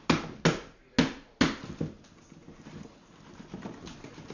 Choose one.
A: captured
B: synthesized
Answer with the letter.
A